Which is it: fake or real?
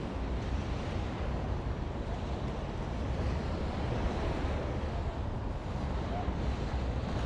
real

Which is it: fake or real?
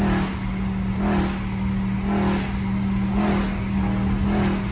real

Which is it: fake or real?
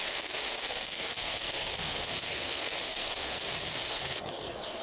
fake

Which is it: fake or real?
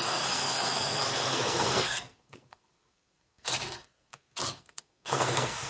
fake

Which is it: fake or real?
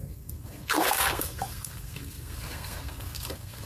fake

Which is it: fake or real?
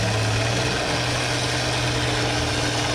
real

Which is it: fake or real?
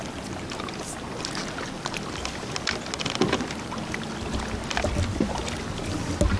real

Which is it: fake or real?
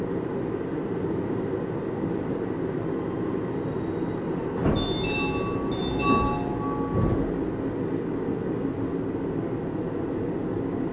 real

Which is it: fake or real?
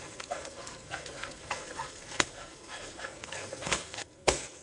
fake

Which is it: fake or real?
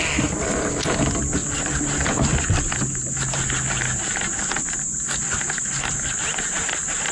real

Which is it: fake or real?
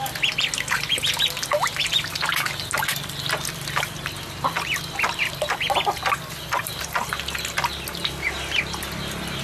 real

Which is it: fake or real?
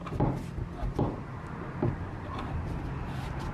real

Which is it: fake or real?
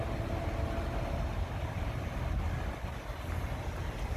real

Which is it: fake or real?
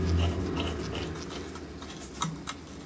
real